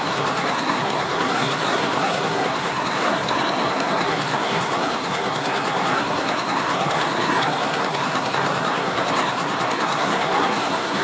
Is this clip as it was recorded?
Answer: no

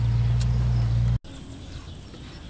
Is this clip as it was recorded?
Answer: yes